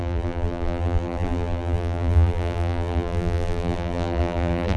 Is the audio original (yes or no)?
no